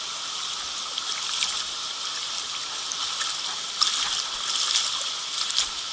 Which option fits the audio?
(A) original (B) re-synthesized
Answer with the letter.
A